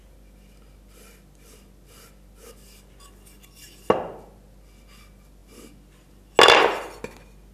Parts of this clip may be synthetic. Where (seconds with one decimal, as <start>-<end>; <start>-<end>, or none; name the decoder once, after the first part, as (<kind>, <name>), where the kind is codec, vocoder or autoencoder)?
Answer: none